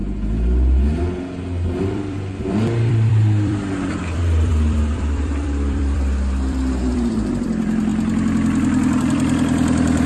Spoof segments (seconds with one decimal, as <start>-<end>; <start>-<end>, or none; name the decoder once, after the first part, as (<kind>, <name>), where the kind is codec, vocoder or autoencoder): 1.8-7.9 (vocoder, BigVGAN v2); 9.0-10.1